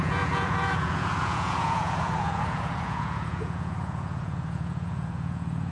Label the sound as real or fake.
fake